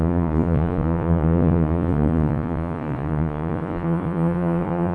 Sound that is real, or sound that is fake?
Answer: fake